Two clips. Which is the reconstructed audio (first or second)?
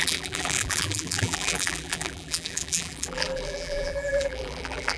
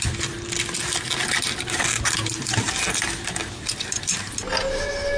first